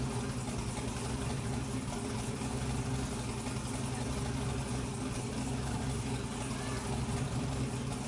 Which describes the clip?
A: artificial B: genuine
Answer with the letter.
B